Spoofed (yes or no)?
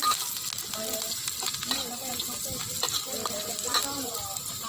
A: no